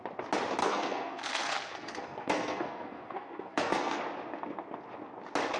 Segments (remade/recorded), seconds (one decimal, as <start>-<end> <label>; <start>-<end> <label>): 0.0-0.6 recorded; 0.6-4.0 remade; 4.0-5.6 recorded